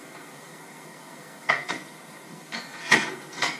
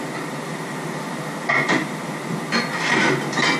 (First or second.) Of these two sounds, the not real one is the first